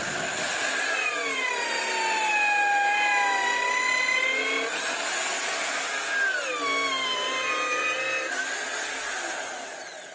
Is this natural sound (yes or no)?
yes